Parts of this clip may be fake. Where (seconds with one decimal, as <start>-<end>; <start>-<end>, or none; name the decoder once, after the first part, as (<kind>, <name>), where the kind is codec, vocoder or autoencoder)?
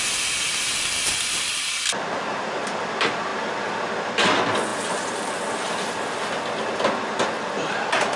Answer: none